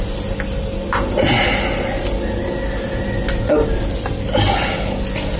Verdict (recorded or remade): recorded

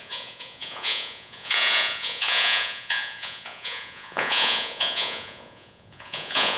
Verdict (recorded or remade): remade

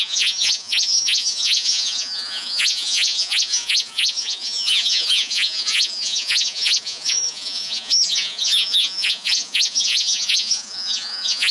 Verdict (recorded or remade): remade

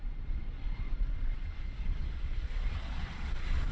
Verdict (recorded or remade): remade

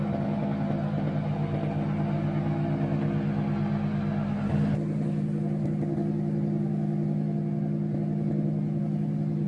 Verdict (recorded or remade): recorded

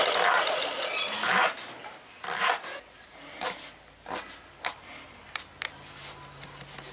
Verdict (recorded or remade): recorded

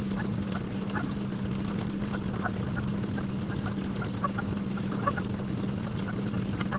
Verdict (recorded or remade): recorded